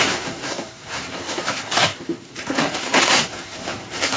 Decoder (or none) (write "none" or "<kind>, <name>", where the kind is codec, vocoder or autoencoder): codec, SNAC